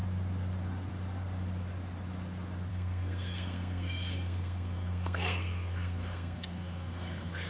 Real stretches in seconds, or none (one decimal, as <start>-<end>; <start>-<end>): 0.0-2.7